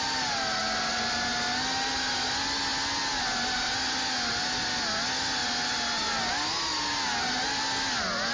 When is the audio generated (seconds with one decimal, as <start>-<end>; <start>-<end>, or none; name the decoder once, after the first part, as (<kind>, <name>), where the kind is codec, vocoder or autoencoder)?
none